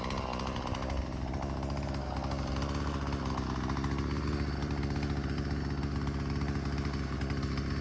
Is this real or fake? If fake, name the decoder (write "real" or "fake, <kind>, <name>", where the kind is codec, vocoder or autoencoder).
real